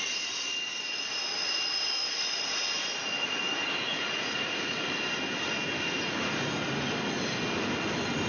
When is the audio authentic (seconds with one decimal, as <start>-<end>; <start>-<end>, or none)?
0.0-3.9; 4.9-8.3